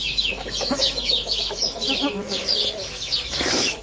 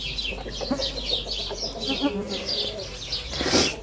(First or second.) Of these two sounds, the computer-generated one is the first